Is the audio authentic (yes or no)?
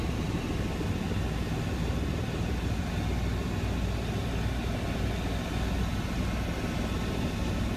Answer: yes